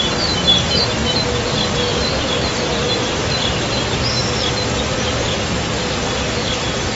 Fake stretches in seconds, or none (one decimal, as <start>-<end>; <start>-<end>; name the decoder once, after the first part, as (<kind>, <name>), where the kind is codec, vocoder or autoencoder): none